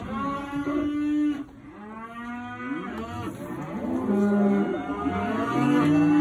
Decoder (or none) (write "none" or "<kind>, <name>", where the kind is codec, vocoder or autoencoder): none